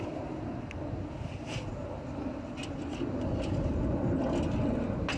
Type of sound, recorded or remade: recorded